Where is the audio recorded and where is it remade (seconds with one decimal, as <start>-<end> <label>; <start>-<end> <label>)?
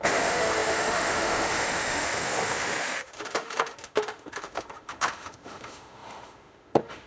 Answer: 0.0-7.1 remade